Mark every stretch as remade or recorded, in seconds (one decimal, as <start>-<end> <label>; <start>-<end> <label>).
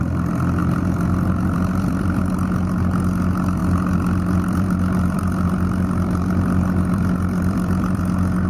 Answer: 0.0-0.6 recorded; 0.6-2.2 remade; 2.2-3.6 recorded; 3.6-8.0 remade; 8.0-8.5 recorded